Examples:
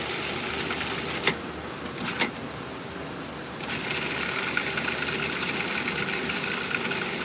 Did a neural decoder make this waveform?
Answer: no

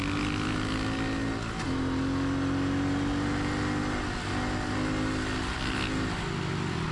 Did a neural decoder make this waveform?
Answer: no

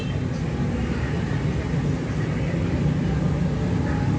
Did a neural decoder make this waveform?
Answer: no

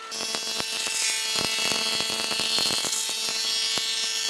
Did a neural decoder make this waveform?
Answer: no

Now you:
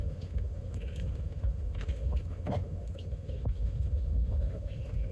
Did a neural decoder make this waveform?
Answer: yes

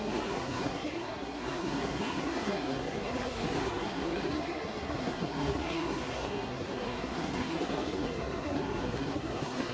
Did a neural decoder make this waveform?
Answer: yes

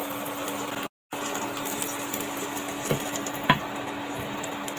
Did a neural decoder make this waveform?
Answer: no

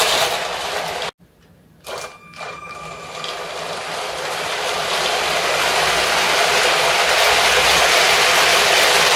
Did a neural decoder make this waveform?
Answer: no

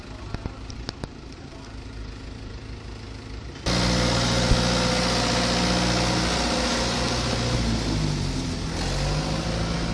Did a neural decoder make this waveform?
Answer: no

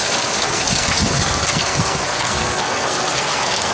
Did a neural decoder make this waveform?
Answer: yes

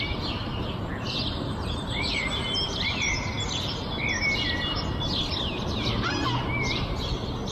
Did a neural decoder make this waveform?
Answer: no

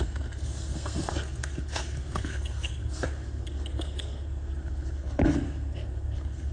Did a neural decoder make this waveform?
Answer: yes